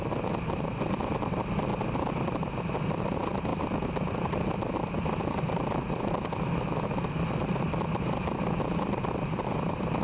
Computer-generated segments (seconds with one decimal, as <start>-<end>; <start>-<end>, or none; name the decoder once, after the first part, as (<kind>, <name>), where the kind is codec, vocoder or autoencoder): none